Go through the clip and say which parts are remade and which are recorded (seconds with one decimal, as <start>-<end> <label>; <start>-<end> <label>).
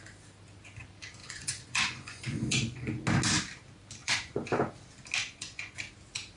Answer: 0.0-1.2 recorded; 1.2-3.0 remade; 3.0-4.0 recorded; 4.0-4.7 remade; 4.7-5.2 recorded; 5.2-5.8 remade; 5.8-6.4 recorded